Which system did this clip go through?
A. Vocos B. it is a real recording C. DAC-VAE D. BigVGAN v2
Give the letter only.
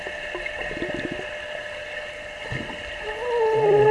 B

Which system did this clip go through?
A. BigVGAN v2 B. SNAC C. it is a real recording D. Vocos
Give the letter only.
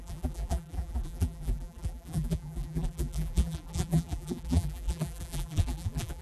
A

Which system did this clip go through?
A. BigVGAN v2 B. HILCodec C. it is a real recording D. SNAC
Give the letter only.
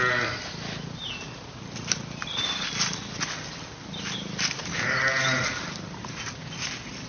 C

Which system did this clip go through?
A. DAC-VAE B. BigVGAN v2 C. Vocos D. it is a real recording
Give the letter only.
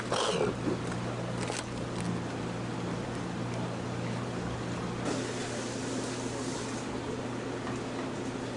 D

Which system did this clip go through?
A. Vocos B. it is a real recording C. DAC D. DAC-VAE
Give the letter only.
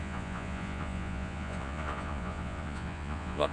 A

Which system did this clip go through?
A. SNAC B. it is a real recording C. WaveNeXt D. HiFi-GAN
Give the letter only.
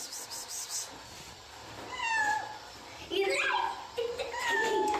B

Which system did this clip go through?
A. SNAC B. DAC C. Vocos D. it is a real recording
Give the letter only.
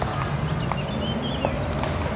D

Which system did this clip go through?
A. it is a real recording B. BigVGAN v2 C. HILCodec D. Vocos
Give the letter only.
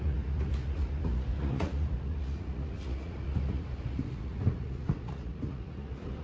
D